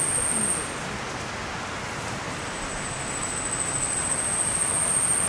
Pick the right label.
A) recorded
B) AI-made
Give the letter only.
A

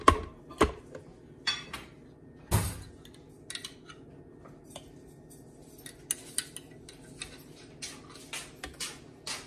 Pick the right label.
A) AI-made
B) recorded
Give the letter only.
B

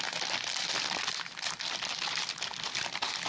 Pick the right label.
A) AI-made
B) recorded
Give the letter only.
B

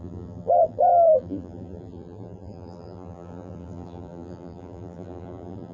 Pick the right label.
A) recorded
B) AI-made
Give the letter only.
B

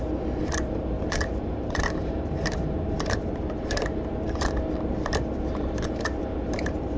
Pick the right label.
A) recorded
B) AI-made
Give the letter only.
B